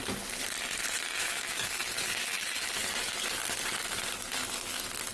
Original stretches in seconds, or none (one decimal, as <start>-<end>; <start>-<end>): 0.0-1.2; 1.7-5.1